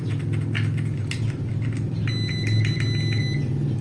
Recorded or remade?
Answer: recorded